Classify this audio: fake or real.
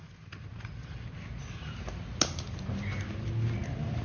real